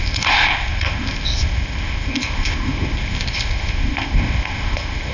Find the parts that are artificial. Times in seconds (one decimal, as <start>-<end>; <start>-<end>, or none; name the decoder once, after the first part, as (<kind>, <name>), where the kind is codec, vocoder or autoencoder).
0.0-5.1 (codec, ZipCodec)